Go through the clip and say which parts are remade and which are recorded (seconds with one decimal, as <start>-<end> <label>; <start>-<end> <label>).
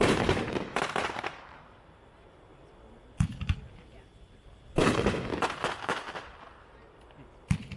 0.0-2.5 remade; 2.5-3.7 recorded; 3.7-4.8 remade; 4.8-7.8 recorded